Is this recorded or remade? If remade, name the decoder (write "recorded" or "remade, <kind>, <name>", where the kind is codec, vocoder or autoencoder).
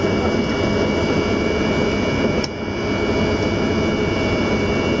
recorded